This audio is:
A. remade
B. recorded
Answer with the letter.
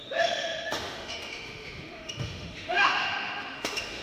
A